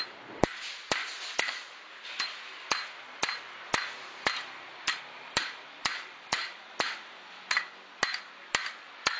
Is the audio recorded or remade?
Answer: recorded